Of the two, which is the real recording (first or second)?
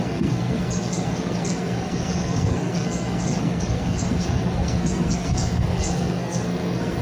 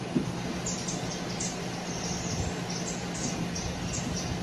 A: second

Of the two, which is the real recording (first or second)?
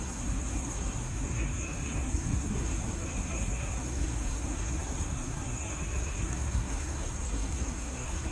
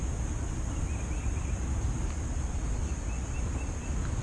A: second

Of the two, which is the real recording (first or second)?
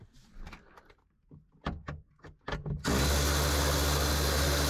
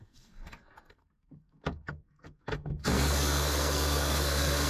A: first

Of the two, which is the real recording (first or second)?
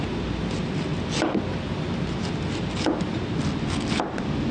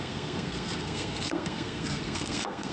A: first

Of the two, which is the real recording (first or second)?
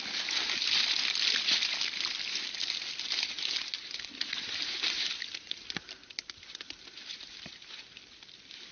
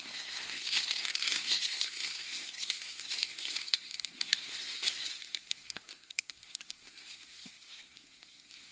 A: first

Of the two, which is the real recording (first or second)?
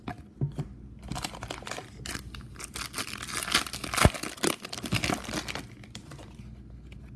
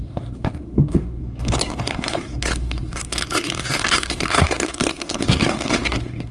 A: first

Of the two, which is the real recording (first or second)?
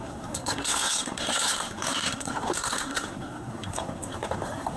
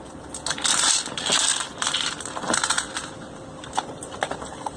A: second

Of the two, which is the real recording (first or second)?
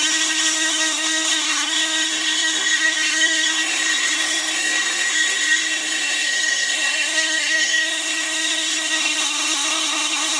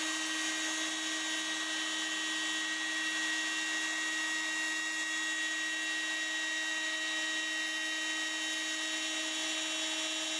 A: second